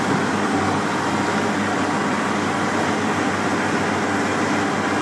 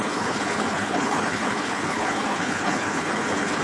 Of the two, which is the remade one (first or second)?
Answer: second